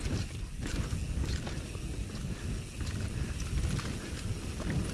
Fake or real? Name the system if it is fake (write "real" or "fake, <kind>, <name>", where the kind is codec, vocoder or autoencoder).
real